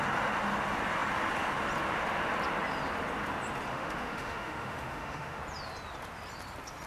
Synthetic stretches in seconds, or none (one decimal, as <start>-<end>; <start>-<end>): 3.7-5.4

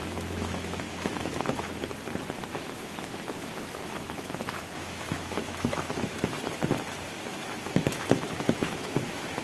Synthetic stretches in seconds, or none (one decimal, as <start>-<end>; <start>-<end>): 0.0-1.7; 2.5-6.4; 7.3-9.4